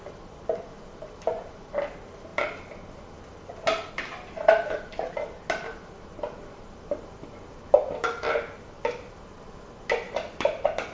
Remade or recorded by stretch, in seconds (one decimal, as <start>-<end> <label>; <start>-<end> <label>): 0.0-10.9 recorded